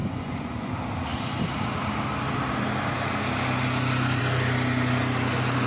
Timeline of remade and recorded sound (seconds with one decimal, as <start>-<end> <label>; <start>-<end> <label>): 0.0-0.7 remade; 0.7-5.7 recorded

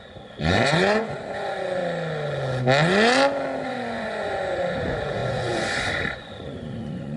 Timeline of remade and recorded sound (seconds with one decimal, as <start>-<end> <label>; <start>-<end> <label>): 0.0-1.8 remade; 1.8-3.7 recorded; 3.7-7.2 remade

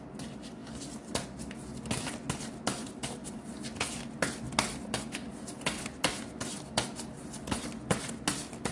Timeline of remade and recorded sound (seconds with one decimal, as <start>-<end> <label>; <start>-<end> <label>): 0.0-8.7 recorded

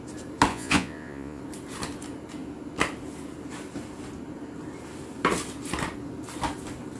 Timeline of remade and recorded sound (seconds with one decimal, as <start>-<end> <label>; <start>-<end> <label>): 0.0-0.5 recorded; 0.5-1.4 remade; 1.4-7.0 recorded

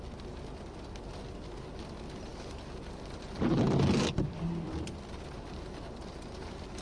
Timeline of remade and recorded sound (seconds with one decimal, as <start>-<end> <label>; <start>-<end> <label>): 0.0-6.8 recorded

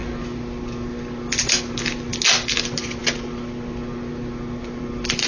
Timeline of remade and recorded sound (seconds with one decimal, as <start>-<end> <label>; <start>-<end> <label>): 0.0-5.3 recorded